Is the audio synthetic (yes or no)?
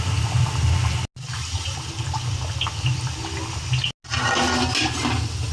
no